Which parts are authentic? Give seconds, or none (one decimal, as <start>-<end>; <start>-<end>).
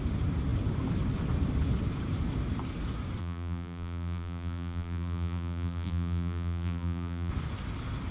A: 0.0-3.2; 7.3-8.1